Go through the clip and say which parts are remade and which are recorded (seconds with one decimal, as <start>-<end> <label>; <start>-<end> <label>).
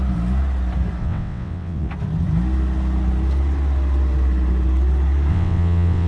0.0-1.0 recorded; 1.0-1.9 remade; 1.9-5.3 recorded; 5.3-6.1 remade